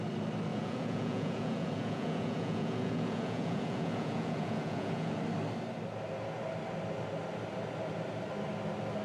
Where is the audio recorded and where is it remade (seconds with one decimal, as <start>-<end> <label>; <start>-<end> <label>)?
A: 0.0-0.5 recorded; 0.5-5.2 remade; 5.2-9.0 recorded